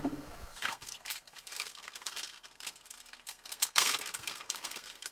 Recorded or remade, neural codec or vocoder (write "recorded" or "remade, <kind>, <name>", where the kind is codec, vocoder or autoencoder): remade, codec, SNAC